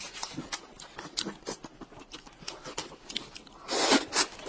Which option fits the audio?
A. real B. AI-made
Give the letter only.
A